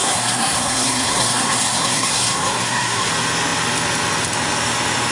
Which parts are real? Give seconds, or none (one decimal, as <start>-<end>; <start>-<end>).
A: 3.1-5.1